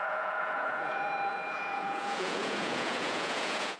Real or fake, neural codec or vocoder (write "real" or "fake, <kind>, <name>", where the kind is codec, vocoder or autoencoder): fake, vocoder, Vocos